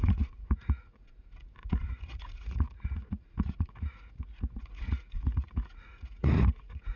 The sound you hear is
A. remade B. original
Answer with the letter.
A